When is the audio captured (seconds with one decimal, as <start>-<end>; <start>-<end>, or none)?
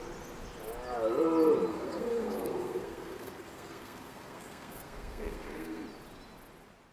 0.0-1.7; 5.8-6.9